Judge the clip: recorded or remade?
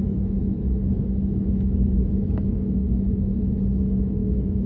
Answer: remade